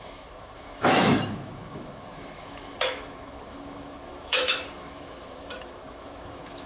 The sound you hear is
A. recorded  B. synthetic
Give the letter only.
B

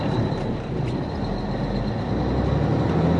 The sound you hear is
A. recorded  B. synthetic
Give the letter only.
A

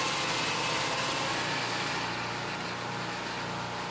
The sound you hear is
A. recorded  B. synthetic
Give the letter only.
A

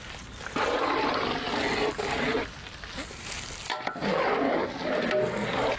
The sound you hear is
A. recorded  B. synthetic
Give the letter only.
A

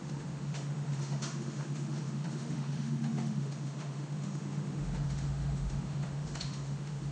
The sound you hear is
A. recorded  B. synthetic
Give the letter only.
B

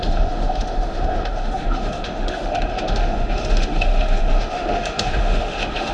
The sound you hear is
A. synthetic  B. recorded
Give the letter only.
A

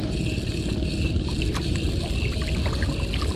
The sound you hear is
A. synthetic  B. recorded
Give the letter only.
B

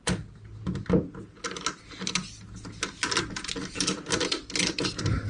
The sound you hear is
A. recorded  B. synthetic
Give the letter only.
A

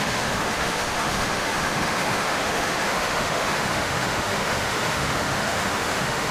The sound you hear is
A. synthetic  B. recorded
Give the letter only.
A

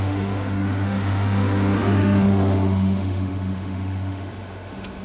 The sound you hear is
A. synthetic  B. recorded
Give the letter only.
A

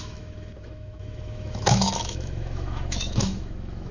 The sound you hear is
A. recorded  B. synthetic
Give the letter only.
B